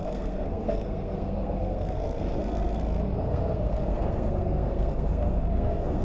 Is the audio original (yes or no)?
no